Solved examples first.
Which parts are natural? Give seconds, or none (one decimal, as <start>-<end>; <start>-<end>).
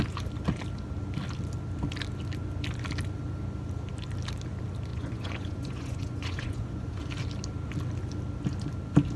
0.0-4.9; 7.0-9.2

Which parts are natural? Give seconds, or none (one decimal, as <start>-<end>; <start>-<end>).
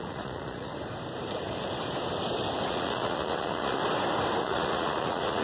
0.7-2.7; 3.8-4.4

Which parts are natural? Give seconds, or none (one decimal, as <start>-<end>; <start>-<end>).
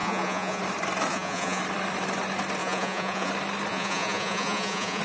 0.6-1.1; 1.6-2.6; 3.3-3.7